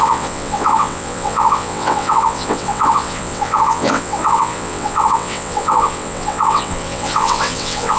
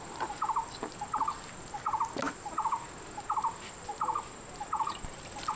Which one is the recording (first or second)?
second